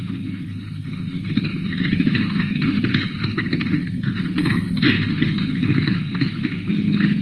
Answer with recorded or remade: remade